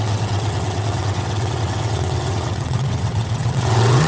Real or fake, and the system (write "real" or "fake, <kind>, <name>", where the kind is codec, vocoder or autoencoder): fake, vocoder, WaveNeXt